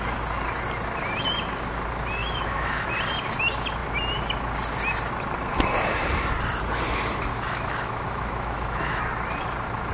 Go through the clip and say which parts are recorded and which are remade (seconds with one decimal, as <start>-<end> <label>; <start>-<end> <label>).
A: 0.0-2.2 recorded; 2.2-2.9 remade; 2.9-7.3 recorded; 7.3-9.0 remade; 9.0-9.9 recorded